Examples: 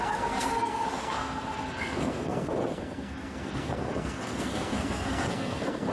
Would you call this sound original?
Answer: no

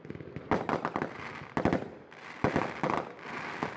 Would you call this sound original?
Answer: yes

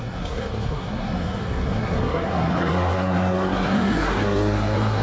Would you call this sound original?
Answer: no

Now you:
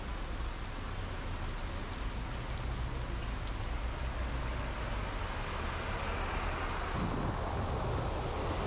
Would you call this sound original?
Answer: yes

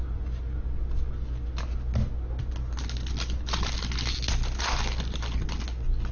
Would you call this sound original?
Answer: yes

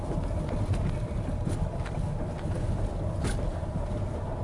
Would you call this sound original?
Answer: yes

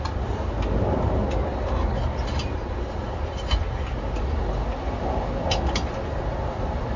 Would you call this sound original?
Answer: yes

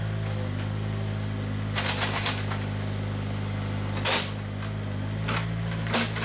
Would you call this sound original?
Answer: yes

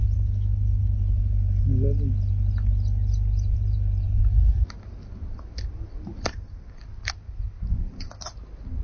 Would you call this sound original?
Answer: yes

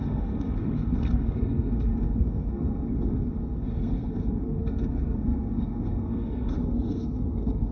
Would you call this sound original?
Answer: no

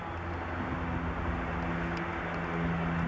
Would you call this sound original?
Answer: yes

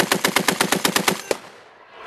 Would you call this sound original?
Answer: yes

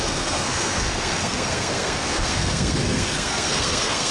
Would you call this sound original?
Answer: no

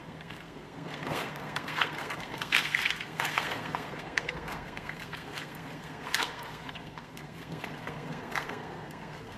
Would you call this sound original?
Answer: no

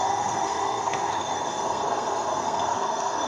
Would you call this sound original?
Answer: no